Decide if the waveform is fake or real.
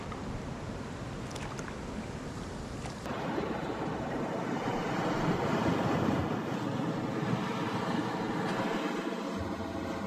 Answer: real